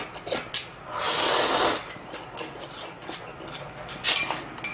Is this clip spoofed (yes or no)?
no